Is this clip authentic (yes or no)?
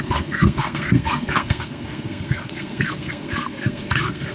no